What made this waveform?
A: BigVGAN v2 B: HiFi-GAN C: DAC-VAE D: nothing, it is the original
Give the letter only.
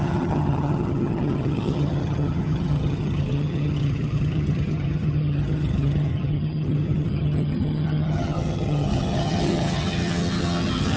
B